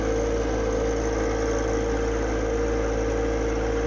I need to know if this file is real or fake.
real